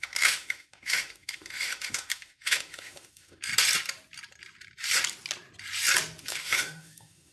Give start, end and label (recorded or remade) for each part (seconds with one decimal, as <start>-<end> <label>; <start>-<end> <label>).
0.0-3.5 remade; 3.5-6.2 recorded; 6.2-7.3 remade